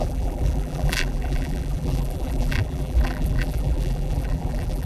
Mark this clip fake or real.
fake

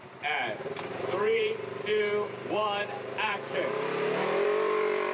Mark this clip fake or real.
fake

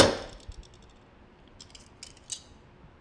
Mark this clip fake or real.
real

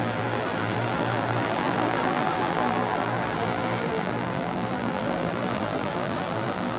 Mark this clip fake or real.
fake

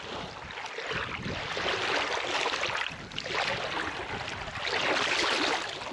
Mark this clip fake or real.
real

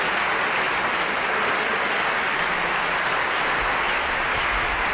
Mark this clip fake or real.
real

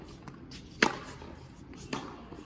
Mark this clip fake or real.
real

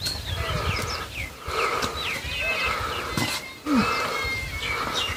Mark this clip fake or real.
real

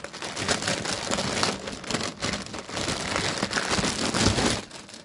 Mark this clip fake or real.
real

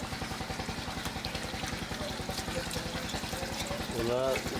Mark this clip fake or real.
real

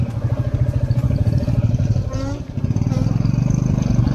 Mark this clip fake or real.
real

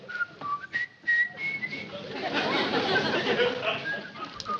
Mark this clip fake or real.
real